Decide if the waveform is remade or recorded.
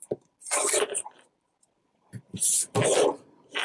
recorded